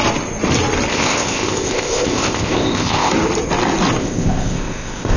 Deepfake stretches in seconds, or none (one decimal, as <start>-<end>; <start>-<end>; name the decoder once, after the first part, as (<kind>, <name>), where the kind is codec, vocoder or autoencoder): 0.9-3.1 (codec, ZipCodec); 4.0-5.2